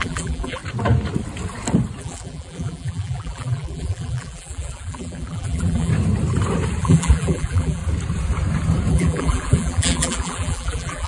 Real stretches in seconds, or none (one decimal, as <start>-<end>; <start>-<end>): 0.6-2.0; 5.9-6.8; 7.8-8.9